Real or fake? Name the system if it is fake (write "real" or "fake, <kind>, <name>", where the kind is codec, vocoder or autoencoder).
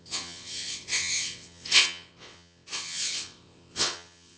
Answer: fake, vocoder, WaveNeXt